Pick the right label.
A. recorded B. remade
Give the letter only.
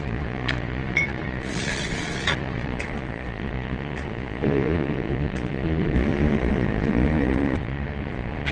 B